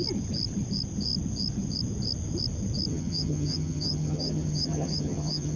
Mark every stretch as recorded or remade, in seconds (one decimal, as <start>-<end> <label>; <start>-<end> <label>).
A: 0.0-2.9 recorded; 2.9-5.6 remade